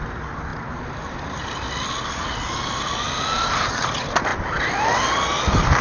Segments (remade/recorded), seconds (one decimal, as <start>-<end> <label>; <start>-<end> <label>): 0.0-2.2 recorded; 2.2-3.0 remade; 3.0-4.3 recorded; 4.3-5.8 remade